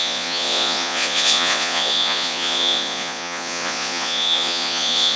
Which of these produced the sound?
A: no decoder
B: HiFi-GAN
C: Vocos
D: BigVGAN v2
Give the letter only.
C